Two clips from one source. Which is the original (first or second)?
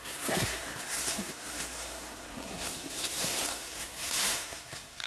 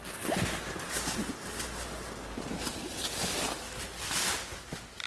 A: second